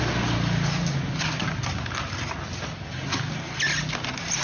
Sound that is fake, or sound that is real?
real